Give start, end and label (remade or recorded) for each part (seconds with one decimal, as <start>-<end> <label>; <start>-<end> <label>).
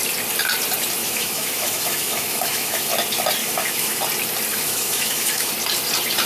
0.0-1.0 recorded; 1.0-2.9 remade; 2.9-3.4 recorded; 3.4-4.0 remade; 4.0-4.5 recorded; 4.5-5.5 remade; 5.5-6.3 recorded